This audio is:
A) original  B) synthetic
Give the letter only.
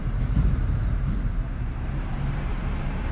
B